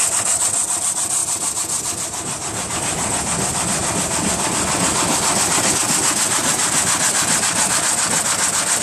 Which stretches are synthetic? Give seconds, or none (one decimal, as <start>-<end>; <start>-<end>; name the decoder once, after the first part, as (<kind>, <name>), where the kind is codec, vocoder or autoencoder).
none